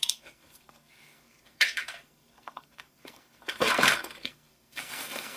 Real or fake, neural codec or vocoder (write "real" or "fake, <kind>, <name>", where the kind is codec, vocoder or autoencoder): fake, codec, SNAC